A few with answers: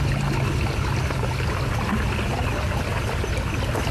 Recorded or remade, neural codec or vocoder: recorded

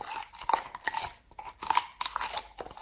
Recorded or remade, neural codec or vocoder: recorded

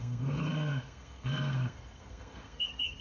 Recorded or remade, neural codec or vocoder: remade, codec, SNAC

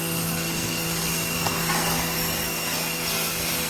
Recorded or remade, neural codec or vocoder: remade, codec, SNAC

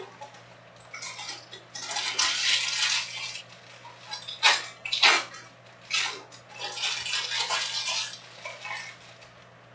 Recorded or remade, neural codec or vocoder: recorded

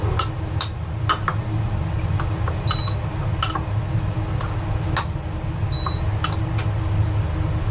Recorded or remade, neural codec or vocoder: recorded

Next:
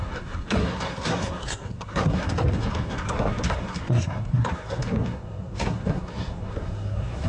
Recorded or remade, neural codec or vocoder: remade, codec, SNAC